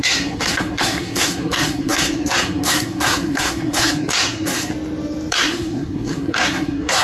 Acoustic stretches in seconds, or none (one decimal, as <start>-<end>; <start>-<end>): 4.7-5.3